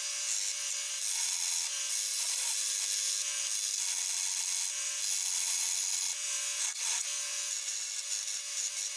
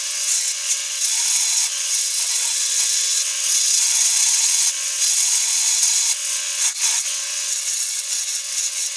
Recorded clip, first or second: first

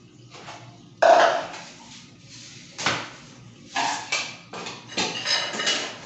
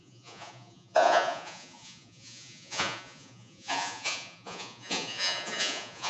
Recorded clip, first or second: first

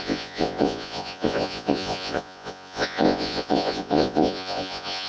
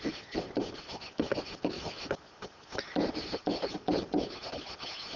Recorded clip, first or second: second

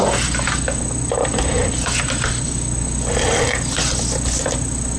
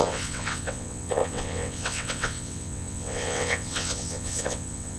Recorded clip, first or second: first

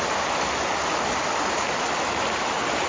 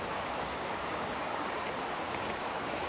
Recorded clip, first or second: first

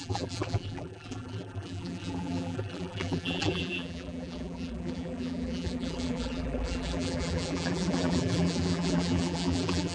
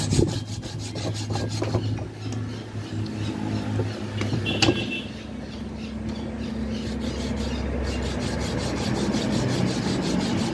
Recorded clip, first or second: second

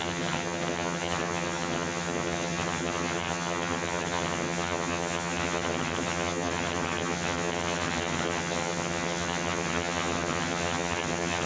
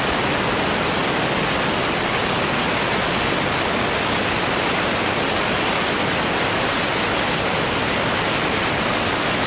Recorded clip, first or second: second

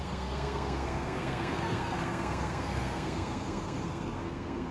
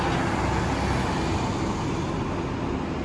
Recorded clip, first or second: second